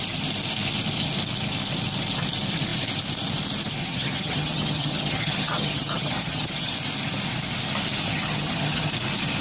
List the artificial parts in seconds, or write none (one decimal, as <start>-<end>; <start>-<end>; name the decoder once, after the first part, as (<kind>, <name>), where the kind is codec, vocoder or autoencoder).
3.8-6.7 (vocoder, HiFi-GAN); 8.1-8.9